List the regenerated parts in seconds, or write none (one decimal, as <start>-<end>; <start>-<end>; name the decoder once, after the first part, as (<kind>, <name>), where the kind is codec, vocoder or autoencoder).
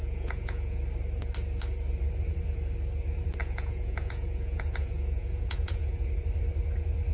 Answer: 0.0-0.8 (vocoder, Vocos); 3.4-6.1